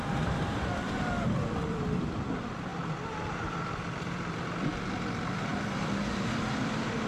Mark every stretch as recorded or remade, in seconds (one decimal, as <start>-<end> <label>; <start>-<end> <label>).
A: 0.0-2.7 remade; 2.7-3.3 recorded; 3.3-7.1 remade